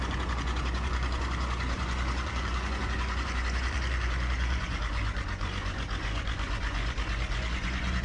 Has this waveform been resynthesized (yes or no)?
yes